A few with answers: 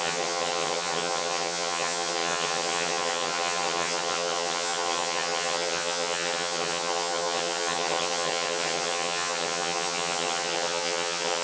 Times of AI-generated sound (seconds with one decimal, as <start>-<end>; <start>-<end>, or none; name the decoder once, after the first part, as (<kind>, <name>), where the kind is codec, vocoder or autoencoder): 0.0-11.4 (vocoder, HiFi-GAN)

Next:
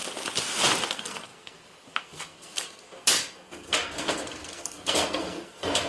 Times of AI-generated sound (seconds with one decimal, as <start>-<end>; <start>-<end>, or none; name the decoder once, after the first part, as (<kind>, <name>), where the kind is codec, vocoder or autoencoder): 0.9-5.9 (codec, SNAC)

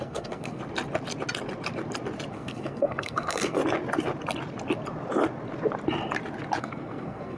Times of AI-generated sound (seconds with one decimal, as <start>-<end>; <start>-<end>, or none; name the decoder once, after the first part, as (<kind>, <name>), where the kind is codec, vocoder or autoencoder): 0.0-0.6 (codec, SNAC); 2.3-3.6; 6.6-7.4

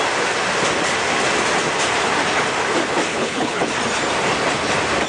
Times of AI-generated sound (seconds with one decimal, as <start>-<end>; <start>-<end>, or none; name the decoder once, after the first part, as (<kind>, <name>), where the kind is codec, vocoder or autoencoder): 3.1-3.6 (codec, HILCodec)

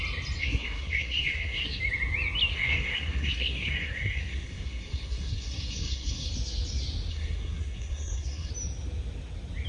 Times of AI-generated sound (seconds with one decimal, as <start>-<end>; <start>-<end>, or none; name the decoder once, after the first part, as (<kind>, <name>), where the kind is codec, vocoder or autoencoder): 0.4-1.8 (codec, SNAC); 2.5-6.3; 7.1-8.5

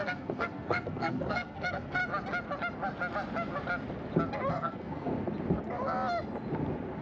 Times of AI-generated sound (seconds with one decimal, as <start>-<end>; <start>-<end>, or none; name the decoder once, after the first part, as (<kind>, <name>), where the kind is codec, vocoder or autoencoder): 0.0-2.0 (codec, SNAC); 4.5-5.1